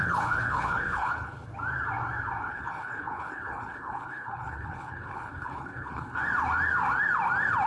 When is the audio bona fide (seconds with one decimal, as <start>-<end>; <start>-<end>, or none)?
1.5-2.5; 6.2-7.7